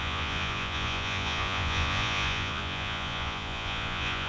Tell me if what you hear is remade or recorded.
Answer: remade